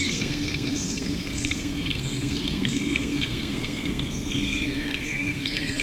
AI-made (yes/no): yes